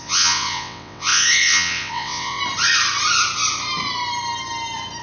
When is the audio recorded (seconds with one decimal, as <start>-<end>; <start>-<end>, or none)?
2.4-5.0